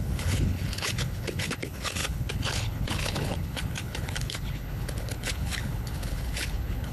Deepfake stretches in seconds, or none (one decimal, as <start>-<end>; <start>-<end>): 0.0-6.9